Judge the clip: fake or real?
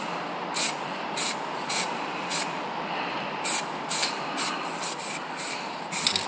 real